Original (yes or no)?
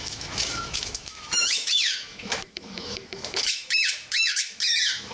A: no